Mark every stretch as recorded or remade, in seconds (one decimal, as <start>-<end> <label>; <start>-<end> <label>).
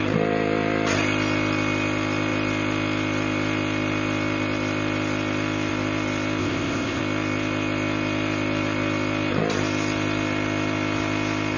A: 0.0-6.4 recorded; 6.4-7.0 remade; 7.0-11.6 recorded